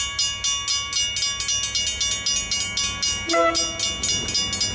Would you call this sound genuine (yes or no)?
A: yes